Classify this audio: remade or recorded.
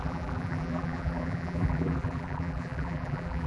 remade